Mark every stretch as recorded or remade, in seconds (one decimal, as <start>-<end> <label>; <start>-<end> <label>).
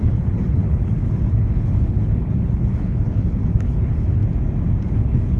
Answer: 0.0-4.2 remade; 4.2-4.8 recorded; 4.8-5.4 remade